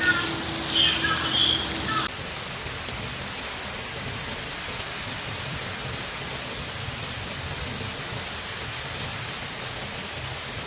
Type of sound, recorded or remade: recorded